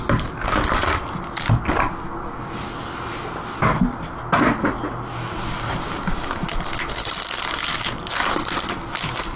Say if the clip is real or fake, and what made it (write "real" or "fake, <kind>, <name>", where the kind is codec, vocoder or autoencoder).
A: real